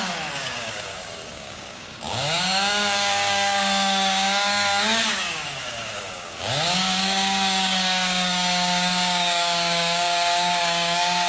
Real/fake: fake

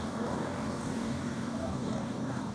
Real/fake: fake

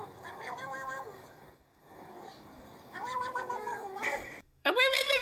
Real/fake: fake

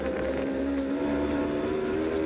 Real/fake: real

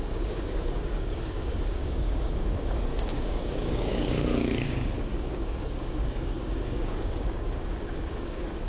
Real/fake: fake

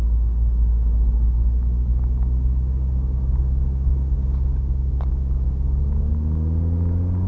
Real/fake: real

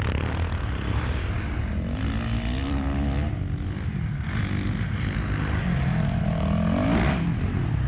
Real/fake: real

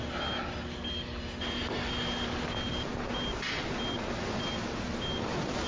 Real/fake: real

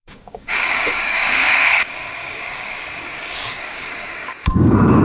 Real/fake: fake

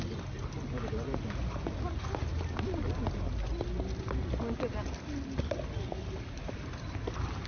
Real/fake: real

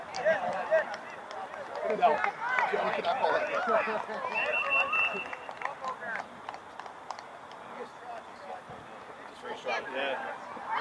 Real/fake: real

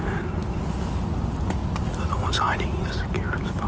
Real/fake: real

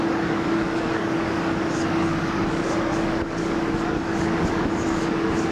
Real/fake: fake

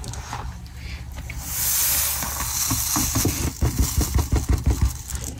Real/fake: real